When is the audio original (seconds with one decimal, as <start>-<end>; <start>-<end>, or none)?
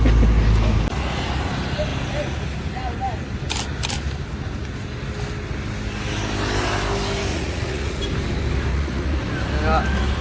0.0-7.3; 8.0-8.7; 9.2-10.2